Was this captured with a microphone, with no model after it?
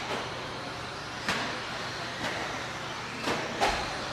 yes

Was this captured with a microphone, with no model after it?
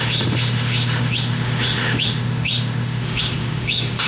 no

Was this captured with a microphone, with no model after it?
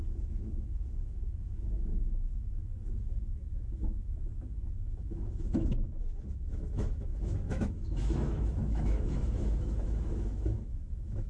no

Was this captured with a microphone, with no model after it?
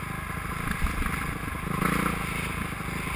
yes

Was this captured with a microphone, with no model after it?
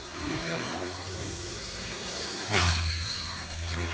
no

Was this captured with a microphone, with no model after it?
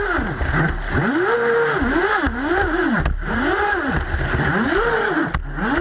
yes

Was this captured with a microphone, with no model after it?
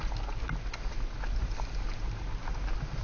yes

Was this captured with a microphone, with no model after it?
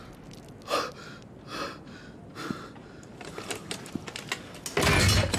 yes